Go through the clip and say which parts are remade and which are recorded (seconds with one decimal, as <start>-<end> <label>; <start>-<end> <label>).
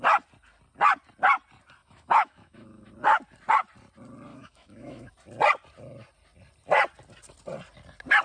0.0-1.8 recorded; 1.8-2.9 remade; 2.9-4.3 recorded; 4.3-5.1 remade; 5.1-8.2 recorded